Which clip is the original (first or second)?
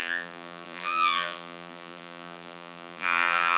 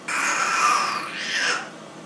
second